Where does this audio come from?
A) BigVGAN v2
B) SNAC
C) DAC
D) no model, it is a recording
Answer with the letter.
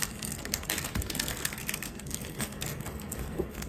B